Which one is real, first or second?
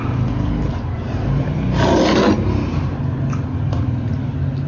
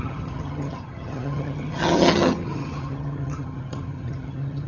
first